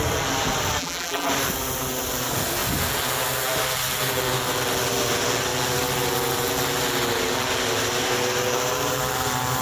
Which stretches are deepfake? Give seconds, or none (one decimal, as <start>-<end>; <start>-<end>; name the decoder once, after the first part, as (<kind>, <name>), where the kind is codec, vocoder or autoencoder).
0.8-1.3 (vocoder, BigVGAN v2)